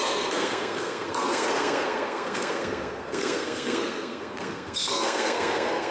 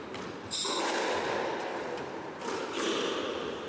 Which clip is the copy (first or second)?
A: first